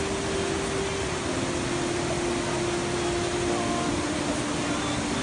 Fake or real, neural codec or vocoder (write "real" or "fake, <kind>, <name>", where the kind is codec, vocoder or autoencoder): real